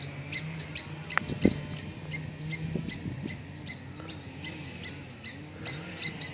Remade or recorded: recorded